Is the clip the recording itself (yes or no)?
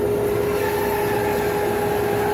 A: yes